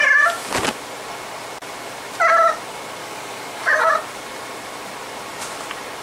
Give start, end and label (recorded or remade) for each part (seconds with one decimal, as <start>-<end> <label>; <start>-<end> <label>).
0.0-3.0 recorded; 3.0-3.7 remade; 3.7-6.0 recorded